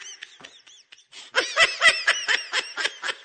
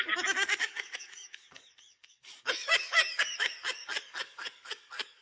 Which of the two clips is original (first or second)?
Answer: first